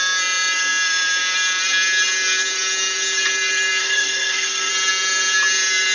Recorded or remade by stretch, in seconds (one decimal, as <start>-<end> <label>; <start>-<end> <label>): 0.0-3.8 recorded; 3.8-4.7 remade; 4.7-5.9 recorded